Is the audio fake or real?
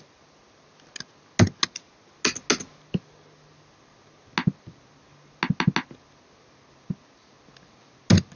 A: real